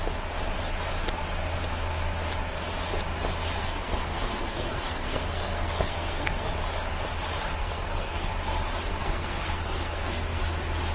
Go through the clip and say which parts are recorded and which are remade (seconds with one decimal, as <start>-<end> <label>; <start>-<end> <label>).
0.0-3.6 recorded; 3.6-6.5 remade; 6.5-7.6 recorded; 7.6-8.3 remade; 8.3-8.9 recorded; 8.9-10.4 remade; 10.4-10.9 recorded